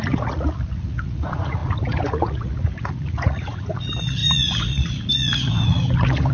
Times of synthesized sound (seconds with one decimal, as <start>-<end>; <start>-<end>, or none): 0.0-6.3